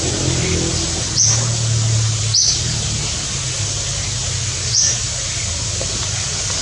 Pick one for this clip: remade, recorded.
recorded